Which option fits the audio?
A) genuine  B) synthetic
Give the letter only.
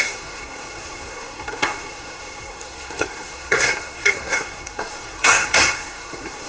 B